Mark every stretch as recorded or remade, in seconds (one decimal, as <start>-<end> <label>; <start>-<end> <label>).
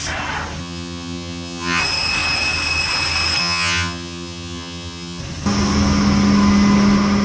0.0-0.6 recorded; 0.6-1.8 remade; 1.8-3.4 recorded; 3.4-5.2 remade; 5.2-7.2 recorded